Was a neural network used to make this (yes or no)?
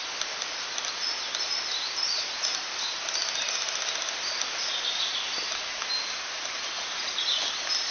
no